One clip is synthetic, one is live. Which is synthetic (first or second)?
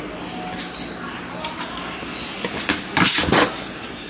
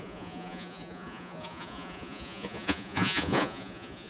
second